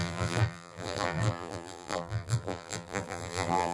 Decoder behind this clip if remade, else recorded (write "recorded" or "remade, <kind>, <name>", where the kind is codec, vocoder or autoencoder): remade, vocoder, BigVGAN v2